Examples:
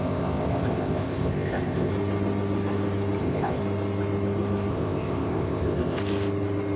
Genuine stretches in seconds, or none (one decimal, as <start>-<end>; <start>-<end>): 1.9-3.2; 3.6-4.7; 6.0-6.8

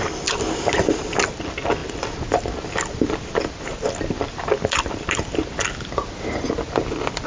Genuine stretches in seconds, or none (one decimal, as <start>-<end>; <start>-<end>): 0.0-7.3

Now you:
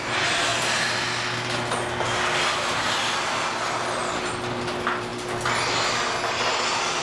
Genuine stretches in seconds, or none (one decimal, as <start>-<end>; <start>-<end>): 0.0-7.0

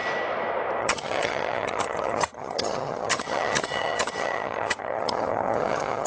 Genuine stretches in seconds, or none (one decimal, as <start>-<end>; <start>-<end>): 0.0-0.8